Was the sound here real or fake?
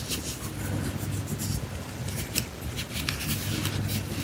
real